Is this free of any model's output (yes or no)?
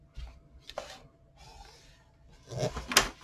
yes